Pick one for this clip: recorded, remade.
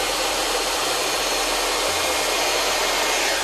recorded